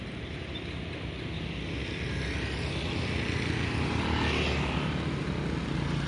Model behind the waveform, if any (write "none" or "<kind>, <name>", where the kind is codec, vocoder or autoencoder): none